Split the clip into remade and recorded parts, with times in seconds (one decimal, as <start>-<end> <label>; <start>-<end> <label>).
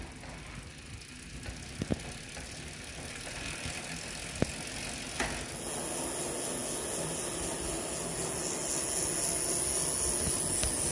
0.0-10.9 recorded